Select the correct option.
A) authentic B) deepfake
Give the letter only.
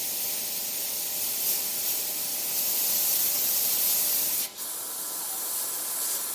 A